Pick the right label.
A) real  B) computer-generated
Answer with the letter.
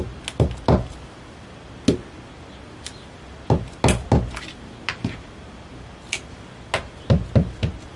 A